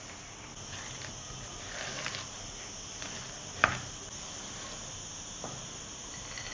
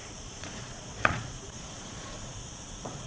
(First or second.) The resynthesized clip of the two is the second